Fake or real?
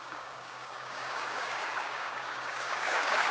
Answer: fake